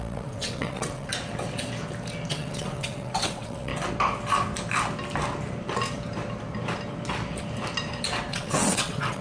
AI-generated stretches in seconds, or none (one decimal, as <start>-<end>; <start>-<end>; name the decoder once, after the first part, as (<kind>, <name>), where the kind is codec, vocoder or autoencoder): 0.0-1.1 (vocoder, WaveNeXt); 2.3-3.7; 8.3-9.2

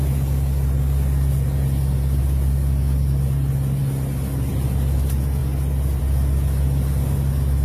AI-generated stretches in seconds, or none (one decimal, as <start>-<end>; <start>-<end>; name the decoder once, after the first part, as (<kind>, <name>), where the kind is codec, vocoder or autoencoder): none